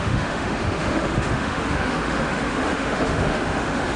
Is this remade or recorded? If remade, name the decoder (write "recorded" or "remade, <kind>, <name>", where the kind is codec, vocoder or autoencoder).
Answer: remade, autoencoder, DAC-VAE